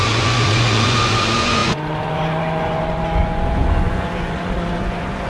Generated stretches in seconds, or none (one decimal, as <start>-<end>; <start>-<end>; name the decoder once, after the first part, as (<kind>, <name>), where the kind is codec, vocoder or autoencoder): 0.0-5.3 (vocoder, Vocos)